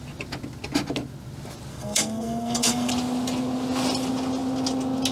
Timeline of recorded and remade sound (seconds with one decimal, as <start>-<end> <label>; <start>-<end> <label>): 0.0-1.7 recorded; 1.7-2.9 remade; 2.9-5.1 recorded